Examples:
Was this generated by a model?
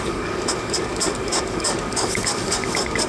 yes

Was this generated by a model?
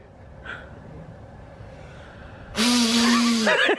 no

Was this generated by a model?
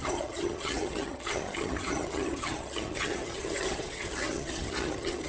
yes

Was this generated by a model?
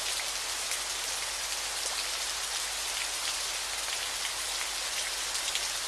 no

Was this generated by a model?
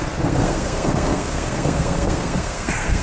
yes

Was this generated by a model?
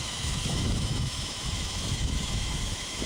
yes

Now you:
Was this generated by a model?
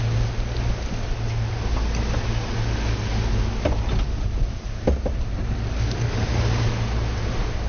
no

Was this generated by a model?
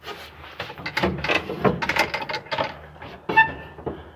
no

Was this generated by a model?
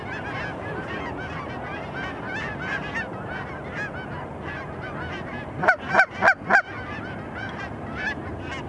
no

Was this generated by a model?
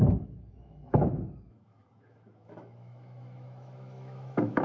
yes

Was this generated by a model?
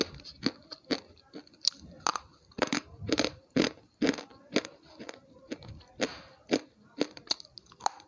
no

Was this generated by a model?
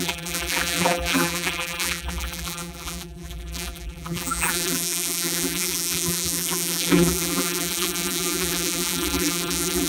yes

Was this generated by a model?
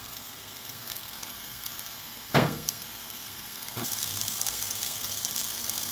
yes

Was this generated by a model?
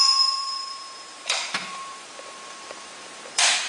yes